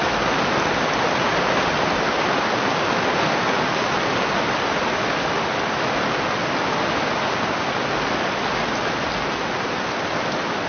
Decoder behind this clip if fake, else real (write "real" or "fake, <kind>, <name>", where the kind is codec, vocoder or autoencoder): real